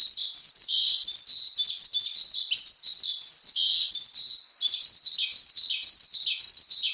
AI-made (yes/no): no